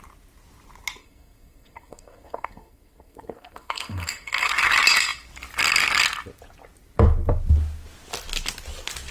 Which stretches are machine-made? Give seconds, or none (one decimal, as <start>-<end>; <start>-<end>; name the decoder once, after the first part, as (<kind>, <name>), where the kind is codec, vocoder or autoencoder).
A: 1.0-4.5 (codec, SNAC)